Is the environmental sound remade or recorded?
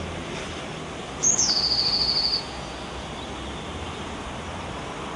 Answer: recorded